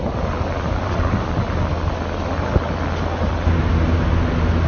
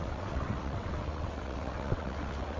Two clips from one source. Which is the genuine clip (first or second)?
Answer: first